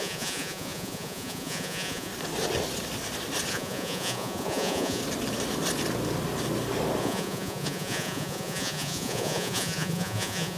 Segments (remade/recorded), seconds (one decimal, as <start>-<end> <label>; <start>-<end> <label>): 0.0-2.1 remade; 2.1-3.5 recorded; 3.5-5.0 remade; 5.0-7.0 recorded; 7.0-10.6 remade